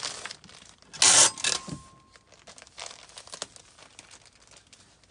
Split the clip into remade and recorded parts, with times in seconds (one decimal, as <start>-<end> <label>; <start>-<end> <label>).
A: 0.0-5.1 recorded